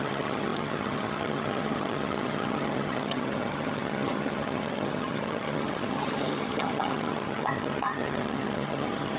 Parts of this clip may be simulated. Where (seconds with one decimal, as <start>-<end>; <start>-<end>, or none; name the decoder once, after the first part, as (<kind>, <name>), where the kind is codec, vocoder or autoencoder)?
0.0-9.2 (vocoder, HiFi-GAN)